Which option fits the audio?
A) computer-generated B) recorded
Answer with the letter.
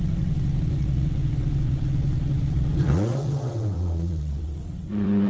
A